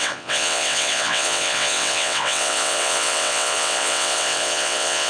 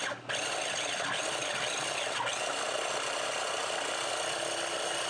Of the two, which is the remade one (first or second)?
first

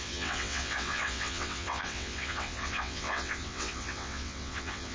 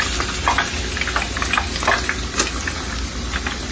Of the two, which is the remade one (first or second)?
first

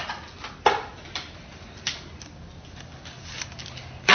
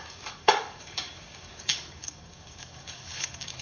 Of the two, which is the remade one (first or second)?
second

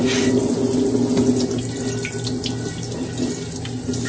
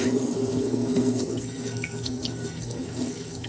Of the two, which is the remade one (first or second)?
second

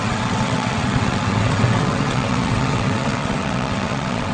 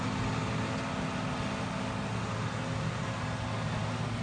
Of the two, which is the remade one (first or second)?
first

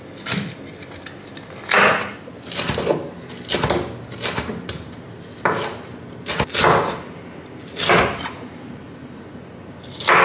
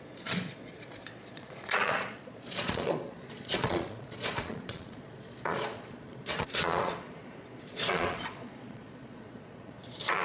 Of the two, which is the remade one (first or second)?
second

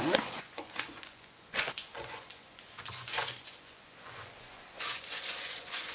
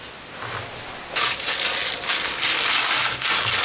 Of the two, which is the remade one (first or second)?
first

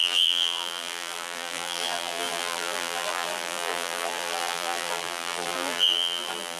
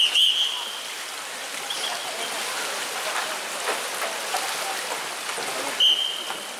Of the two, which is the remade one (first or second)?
first